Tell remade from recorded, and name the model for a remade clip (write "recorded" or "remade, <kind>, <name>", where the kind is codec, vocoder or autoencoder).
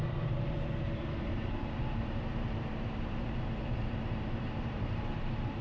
remade, vocoder, BigVGAN v2